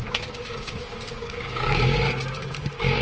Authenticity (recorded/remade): remade